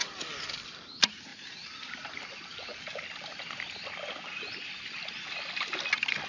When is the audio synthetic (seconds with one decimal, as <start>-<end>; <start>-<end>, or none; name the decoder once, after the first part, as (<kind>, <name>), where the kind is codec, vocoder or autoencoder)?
1.3-2.2 (vocoder, BigVGAN v2)